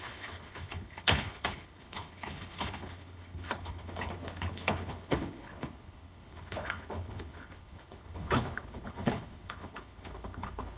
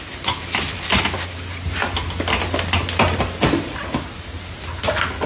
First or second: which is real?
second